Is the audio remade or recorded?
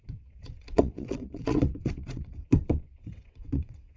remade